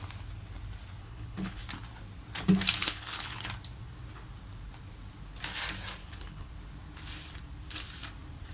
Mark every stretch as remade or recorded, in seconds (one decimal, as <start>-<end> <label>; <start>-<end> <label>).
0.0-1.0 recorded; 1.0-1.6 remade; 1.6-2.8 recorded; 2.8-3.5 remade; 3.5-6.0 recorded; 6.0-6.5 remade; 6.5-8.5 recorded